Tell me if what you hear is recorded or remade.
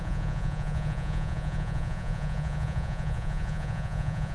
remade